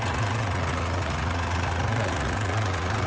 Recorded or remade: remade